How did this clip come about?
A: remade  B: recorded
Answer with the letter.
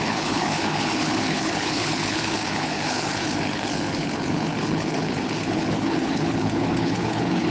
A